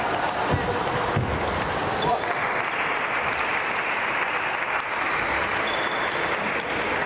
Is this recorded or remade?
recorded